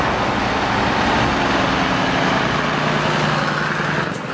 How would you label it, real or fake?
real